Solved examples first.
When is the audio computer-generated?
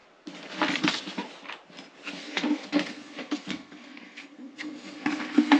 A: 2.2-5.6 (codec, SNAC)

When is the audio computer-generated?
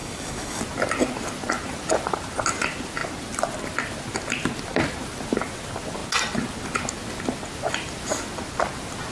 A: 0.0-0.6 (codec, DAC)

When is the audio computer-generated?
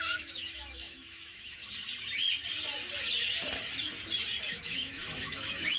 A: 0.0-1.6 (autoencoder, DAC-VAE); 4.6-5.8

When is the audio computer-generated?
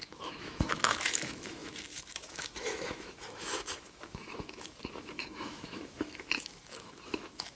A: 0.0-7.6 (autoencoder, DAC-VAE)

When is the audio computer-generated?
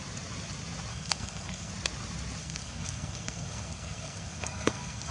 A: 0.9-1.7 (codec, SNAC); 2.4-5.1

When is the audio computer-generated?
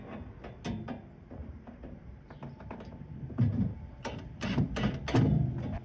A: 1.4-4.6 (vocoder, BigVGAN v2)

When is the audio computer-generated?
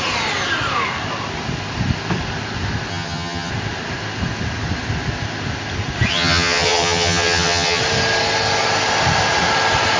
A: 2.9-3.5 (vocoder, HiFi-GAN); 6.1-7.8